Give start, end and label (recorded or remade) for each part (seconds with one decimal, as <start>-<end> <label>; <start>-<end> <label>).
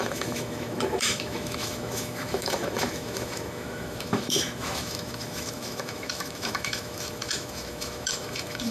0.0-8.7 remade